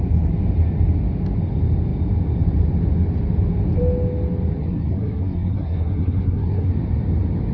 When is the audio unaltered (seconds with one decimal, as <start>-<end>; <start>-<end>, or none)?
0.0-4.6; 6.7-7.5